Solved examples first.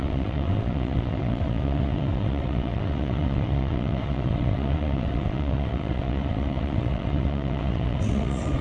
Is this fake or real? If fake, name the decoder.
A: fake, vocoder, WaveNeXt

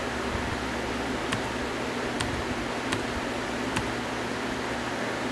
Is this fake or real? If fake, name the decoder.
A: real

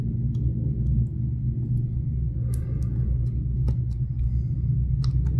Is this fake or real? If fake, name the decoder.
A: real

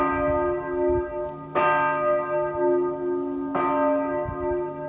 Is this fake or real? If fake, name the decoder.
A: real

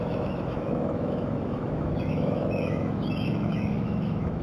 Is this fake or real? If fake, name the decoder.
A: fake, autoencoder, DAC-VAE